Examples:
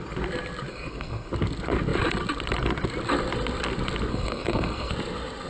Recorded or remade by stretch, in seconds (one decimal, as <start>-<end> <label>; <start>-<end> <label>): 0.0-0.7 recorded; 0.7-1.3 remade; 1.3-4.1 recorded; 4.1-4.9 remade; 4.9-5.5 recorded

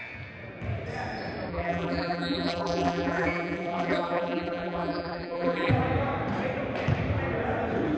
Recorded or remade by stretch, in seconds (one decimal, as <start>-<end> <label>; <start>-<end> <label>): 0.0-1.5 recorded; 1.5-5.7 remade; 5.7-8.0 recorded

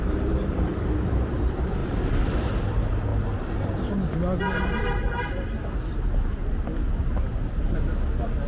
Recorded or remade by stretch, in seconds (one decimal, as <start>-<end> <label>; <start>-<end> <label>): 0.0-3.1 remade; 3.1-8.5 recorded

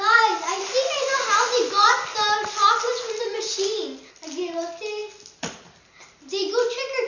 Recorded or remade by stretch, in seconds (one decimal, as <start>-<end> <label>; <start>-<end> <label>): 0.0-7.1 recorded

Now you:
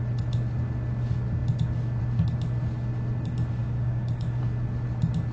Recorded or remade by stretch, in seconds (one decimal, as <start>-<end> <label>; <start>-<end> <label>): 0.0-3.6 recorded; 3.6-4.4 remade; 4.4-5.3 recorded

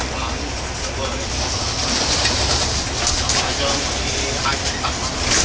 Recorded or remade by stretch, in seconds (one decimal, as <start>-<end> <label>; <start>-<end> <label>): 0.0-1.8 recorded; 1.8-5.0 remade; 5.0-5.4 recorded

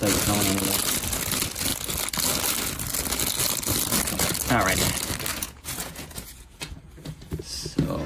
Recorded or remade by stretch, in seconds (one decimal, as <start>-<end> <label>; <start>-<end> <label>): 0.0-5.3 recorded; 5.3-7.3 remade; 7.3-8.1 recorded